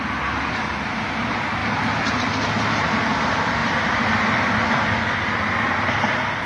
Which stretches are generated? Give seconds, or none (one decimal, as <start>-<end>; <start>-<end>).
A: 1.6-2.4; 3.6-5.5